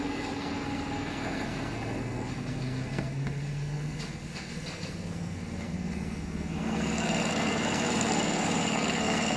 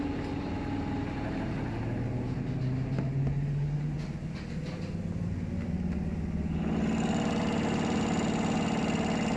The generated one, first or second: first